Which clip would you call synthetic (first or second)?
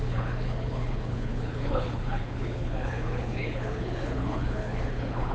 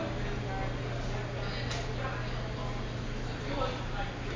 first